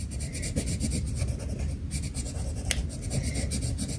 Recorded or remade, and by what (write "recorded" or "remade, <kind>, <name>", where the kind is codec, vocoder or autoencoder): recorded